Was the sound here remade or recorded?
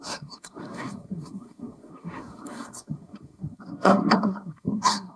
remade